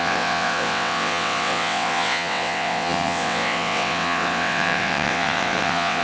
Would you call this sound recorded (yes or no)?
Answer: no